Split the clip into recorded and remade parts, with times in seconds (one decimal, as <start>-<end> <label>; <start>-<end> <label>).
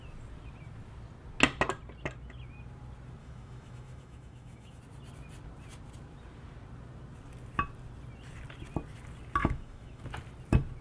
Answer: 0.0-3.2 recorded; 3.2-4.8 remade; 4.8-9.4 recorded; 9.4-10.0 remade; 10.0-10.8 recorded